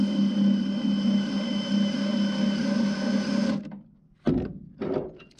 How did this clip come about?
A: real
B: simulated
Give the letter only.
A